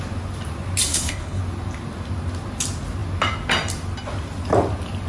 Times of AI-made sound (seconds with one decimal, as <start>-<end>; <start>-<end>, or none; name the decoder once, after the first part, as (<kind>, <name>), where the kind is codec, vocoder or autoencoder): 0.9-1.4 (codec, HILCodec)

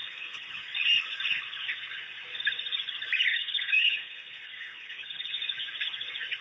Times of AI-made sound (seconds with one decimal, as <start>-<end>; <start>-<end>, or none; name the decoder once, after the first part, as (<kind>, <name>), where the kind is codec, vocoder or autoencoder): 0.0-0.5 (codec, HILCodec); 3.3-5.3